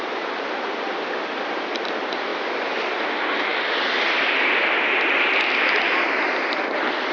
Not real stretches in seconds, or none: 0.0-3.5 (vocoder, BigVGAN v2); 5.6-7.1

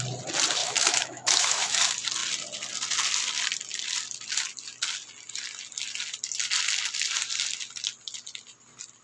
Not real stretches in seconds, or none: 0.6-1.8 (autoencoder, DAC-VAE)

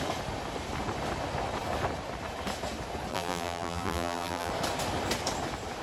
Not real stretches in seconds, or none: 3.1-4.5 (vocoder, BigVGAN v2)

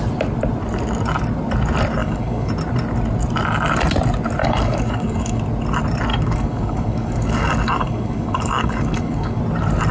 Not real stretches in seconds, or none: 2.0-2.5 (codec, DAC); 4.4-5.4; 6.1-9.4

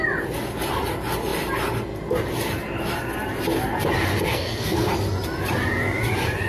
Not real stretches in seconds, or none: 4.3-4.9 (codec, SNAC)

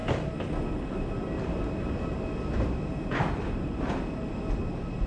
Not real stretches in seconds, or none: none

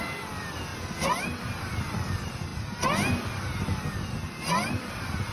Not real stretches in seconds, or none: 0.0-5.3 (vocoder, BigVGAN v2)

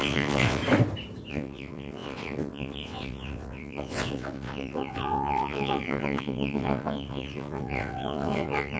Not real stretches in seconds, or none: 0.0-0.6 (vocoder, WaveNeXt); 1.3-8.8